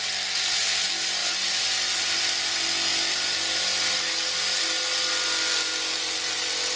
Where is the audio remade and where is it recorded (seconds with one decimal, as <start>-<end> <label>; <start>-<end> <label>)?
0.0-6.8 recorded